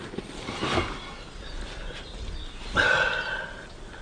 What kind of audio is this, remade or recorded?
recorded